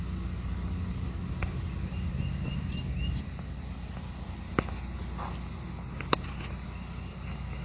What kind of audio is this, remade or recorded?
recorded